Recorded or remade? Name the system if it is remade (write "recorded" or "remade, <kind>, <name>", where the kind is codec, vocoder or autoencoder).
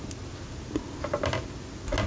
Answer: recorded